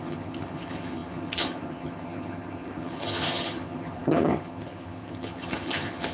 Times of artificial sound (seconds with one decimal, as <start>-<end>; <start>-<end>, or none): 0.0-6.1